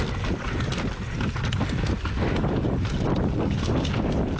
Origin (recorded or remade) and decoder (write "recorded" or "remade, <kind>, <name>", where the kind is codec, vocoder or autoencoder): recorded